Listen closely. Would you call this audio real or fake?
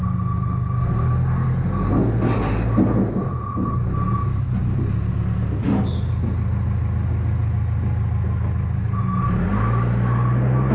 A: real